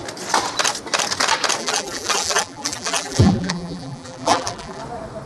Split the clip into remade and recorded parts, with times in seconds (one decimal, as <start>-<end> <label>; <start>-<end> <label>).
0.0-1.6 recorded; 1.6-4.8 remade; 4.8-5.3 recorded